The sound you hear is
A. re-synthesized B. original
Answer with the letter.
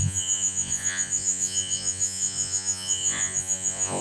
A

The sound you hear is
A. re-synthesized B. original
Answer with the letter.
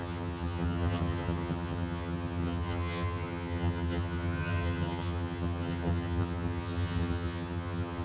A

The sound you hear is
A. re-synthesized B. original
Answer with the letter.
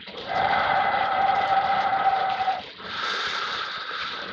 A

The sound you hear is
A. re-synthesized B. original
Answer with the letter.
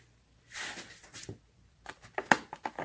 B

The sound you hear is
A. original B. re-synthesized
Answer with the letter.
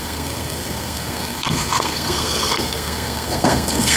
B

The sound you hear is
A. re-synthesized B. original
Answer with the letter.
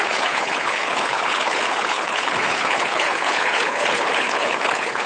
A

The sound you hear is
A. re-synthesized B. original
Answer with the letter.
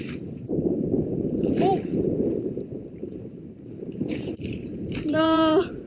A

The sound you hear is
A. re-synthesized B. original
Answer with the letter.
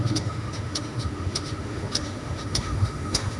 A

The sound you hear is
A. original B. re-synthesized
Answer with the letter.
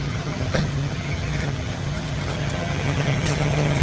B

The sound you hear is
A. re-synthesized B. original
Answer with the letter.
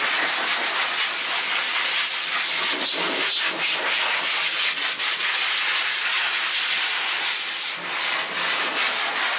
B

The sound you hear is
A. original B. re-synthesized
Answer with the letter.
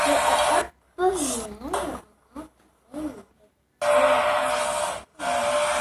A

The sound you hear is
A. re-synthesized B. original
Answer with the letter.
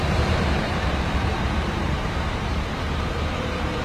A